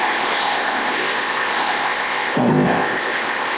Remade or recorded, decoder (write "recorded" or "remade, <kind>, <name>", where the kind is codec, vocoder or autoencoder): remade, codec, ZipCodec